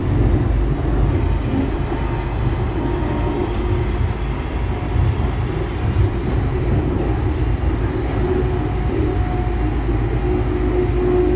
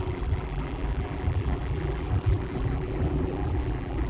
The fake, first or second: second